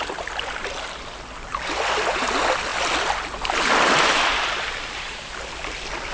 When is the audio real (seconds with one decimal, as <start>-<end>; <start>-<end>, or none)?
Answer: 0.0-6.1